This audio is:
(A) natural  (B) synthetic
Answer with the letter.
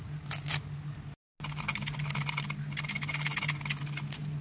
A